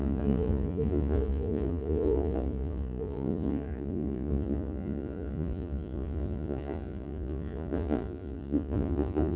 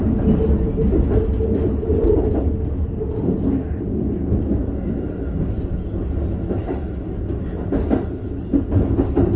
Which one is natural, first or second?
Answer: second